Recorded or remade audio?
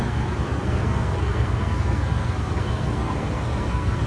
remade